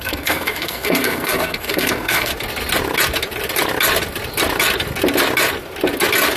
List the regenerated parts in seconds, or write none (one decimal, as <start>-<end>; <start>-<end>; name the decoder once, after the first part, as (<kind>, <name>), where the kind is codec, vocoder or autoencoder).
0.0-2.3 (codec, SNAC)